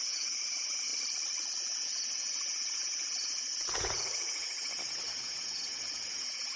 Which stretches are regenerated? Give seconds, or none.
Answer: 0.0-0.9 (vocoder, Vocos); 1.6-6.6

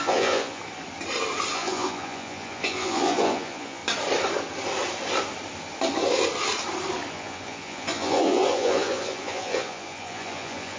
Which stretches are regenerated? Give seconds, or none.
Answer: 0.0-0.6 (vocoder, Vocos); 1.5-3.8; 7.1-10.8

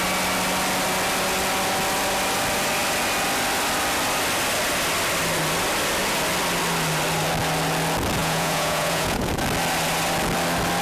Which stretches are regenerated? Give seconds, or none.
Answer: 8.2-9.3 (vocoder, Vocos)

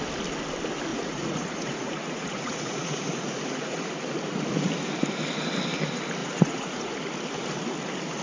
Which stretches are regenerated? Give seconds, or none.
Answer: 0.9-3.9 (vocoder, Vocos); 6.2-6.9

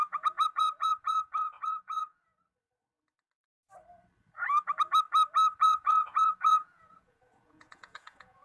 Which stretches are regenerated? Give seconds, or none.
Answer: 0.0-2.3 (vocoder, Vocos); 5.6-8.4

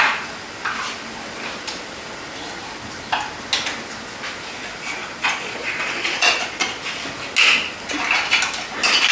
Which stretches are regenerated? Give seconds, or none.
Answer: 5.0-6.8 (vocoder, Vocos)

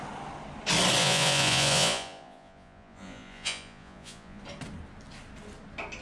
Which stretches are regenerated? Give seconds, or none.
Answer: 1.0-4.4 (vocoder, Vocos)